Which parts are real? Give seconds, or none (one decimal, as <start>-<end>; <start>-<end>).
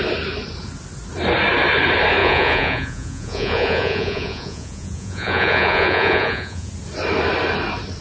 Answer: 0.0-2.2; 6.7-8.0